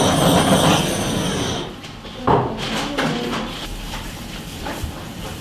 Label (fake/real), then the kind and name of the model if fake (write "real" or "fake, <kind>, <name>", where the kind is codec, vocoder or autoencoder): real